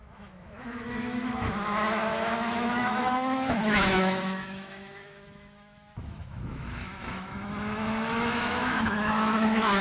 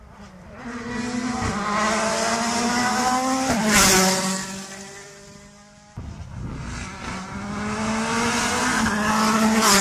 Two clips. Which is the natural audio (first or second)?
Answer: second